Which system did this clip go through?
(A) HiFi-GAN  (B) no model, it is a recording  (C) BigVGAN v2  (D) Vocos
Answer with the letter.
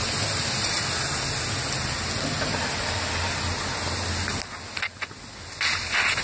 B